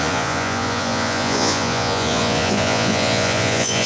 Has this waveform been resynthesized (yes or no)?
yes